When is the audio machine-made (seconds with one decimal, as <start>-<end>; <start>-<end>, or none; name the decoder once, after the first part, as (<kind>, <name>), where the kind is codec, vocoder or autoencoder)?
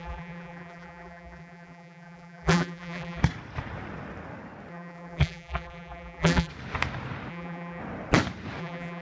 0.0-3.2 (vocoder, BigVGAN v2); 4.7-6.5; 7.3-7.8; 8.6-9.0